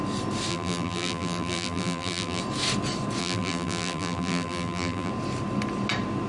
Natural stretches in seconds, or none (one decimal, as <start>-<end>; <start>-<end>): 0.0-0.5; 2.4-3.2; 5.1-6.3